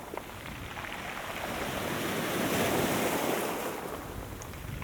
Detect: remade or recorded recorded